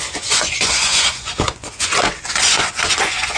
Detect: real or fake fake